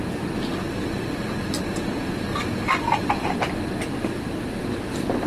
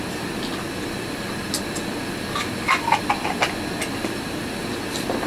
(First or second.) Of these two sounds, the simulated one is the first